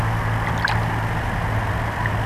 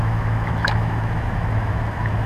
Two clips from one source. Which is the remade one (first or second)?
second